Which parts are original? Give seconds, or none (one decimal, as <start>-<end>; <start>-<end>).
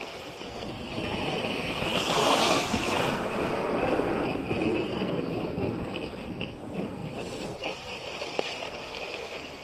none